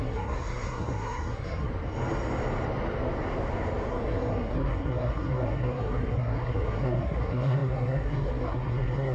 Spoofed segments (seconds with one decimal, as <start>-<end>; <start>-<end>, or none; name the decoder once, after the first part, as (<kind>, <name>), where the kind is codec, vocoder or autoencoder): 0.0-1.7 (codec, SNAC); 3.9-9.1